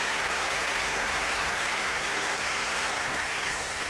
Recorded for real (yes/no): no